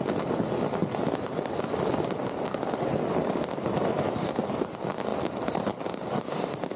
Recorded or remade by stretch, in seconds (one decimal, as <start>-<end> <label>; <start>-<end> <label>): 0.0-6.8 recorded